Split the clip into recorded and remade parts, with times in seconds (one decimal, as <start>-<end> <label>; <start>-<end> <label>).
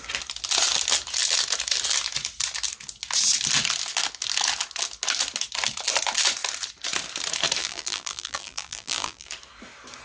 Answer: 0.0-7.6 recorded; 7.6-9.3 remade; 9.3-10.0 recorded